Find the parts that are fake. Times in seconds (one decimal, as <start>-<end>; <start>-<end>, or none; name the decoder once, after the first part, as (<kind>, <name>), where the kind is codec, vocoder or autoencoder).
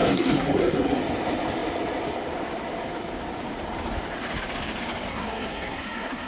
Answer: 0.0-1.0 (codec, SNAC); 5.1-6.3